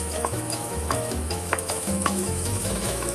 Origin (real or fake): fake